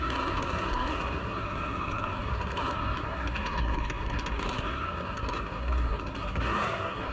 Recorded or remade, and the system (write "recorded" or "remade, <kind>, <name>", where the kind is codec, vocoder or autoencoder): remade, codec, SNAC